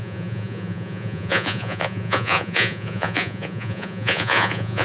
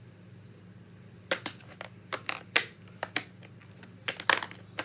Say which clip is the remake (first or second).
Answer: first